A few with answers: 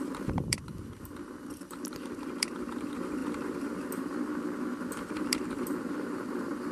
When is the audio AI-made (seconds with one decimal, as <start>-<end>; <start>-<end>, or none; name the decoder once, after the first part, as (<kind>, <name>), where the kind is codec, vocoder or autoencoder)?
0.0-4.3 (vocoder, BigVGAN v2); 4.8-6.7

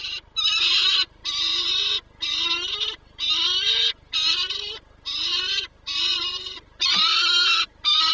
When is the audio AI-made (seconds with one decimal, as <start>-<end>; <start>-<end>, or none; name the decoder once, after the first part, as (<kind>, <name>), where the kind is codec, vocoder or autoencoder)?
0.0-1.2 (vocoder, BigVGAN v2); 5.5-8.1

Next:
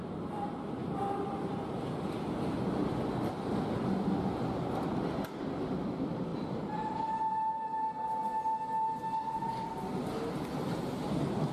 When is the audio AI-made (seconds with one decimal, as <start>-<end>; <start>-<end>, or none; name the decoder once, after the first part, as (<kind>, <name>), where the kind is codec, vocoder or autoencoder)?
none

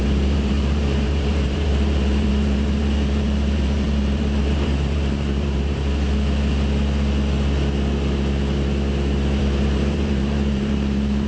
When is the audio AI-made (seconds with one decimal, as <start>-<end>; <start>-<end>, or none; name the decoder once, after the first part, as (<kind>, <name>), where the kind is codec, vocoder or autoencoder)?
0.0-5.8 (vocoder, BigVGAN v2); 9.4-11.3